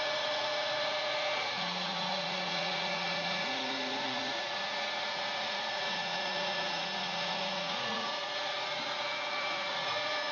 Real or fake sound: fake